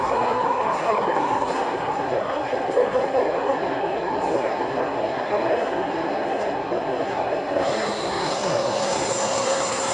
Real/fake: fake